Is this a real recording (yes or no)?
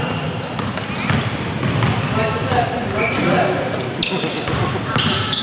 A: yes